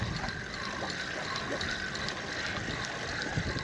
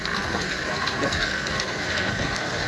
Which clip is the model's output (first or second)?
second